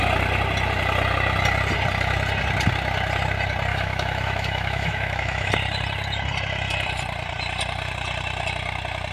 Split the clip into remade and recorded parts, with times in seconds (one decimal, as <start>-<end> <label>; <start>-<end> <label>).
0.0-3.7 recorded; 3.7-5.5 remade; 5.5-9.1 recorded